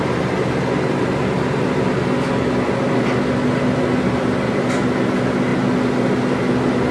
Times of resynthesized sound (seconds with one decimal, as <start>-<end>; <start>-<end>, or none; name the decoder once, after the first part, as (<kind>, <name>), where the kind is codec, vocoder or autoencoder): none